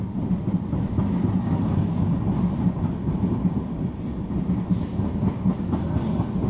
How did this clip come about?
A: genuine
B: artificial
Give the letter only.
A